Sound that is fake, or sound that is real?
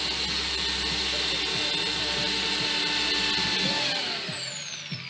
real